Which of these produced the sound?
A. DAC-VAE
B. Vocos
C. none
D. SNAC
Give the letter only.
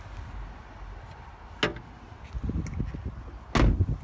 C